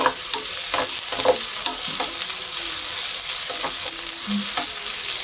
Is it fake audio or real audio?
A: real